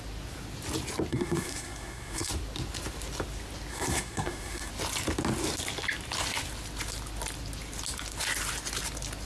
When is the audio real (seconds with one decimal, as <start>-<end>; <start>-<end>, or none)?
0.0-1.1; 2.3-3.7; 4.7-9.2